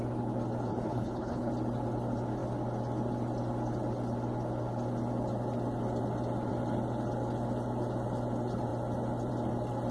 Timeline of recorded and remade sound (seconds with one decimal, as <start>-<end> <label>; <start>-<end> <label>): 0.0-0.7 recorded; 0.7-1.5 remade; 1.5-9.9 recorded